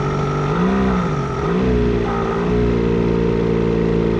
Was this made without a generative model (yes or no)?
yes